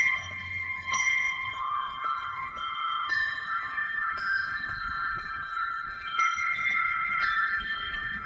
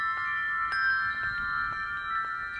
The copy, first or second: first